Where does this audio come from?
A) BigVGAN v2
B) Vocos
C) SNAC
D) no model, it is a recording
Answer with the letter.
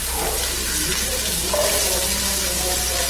D